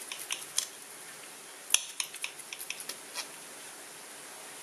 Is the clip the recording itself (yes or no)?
yes